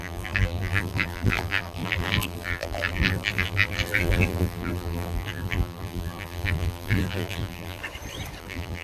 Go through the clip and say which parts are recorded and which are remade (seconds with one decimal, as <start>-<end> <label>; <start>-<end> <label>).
0.0-7.8 remade; 7.8-8.4 recorded; 8.4-8.8 remade